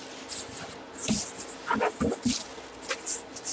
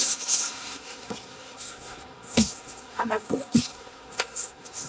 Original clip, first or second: first